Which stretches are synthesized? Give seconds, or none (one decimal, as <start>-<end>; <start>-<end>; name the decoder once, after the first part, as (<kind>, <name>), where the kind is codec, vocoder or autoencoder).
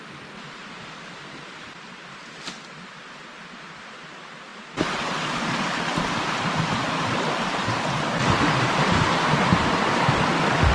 none